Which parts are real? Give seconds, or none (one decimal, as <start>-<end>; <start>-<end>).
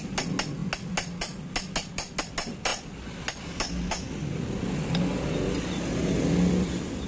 0.0-7.1